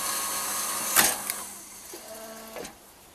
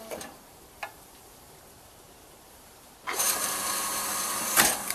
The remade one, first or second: second